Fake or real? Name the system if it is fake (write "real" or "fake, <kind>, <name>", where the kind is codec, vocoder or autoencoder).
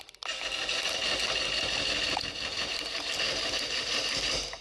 real